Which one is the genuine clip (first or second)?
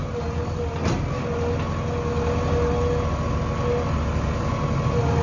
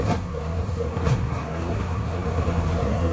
first